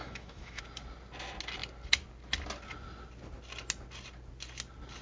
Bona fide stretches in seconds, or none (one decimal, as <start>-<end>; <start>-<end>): 0.6-5.0